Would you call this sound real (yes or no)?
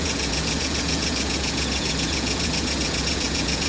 no